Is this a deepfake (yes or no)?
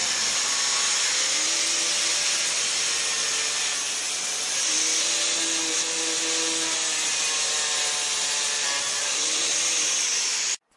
no